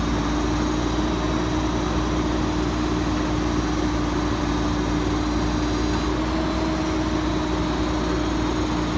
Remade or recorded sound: recorded